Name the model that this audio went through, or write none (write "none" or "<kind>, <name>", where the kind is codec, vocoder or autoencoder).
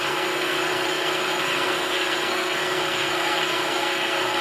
codec, SNAC